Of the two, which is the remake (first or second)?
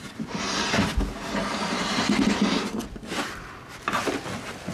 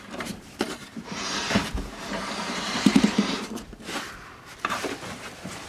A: second